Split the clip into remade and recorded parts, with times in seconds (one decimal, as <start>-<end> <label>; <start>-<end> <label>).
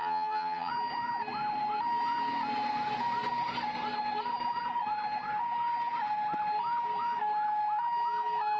0.0-0.7 remade; 0.7-8.6 recorded